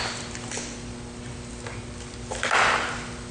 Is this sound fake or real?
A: real